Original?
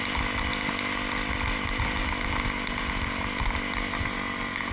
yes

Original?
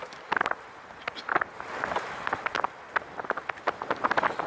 yes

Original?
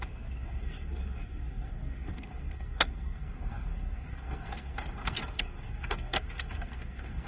no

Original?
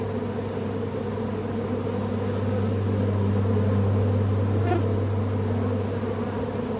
yes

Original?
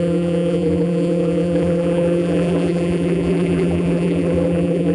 no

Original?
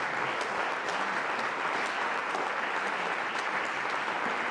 yes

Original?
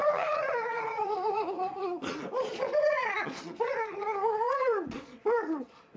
no